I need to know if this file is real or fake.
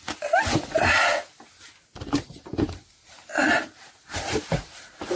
real